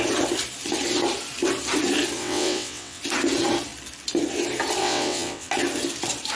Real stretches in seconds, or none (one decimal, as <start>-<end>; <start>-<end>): 0.0-2.2; 3.0-4.8; 5.5-6.4